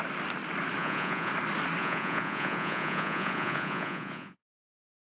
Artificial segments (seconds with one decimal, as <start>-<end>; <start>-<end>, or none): 0.8-1.3; 1.8-5.1